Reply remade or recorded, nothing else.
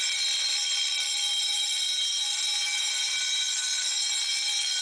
recorded